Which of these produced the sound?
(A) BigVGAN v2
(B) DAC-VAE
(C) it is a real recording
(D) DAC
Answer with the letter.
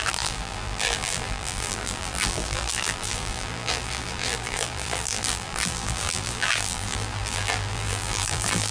A